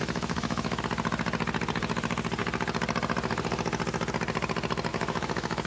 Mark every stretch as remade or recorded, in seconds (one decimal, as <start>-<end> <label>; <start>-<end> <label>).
0.0-0.8 remade; 0.8-4.9 recorded; 4.9-5.7 remade